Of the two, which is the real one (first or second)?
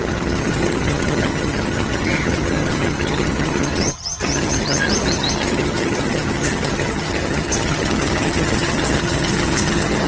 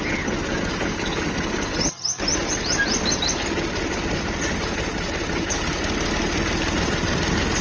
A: second